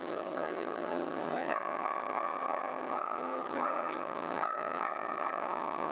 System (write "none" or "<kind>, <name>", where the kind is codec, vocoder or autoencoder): vocoder, HiFi-GAN